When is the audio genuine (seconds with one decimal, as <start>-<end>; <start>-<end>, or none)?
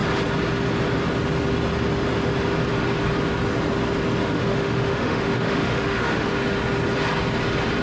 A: 0.0-4.2; 6.3-7.8